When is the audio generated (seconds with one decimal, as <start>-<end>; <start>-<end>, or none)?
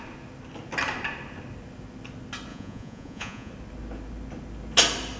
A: 2.5-3.5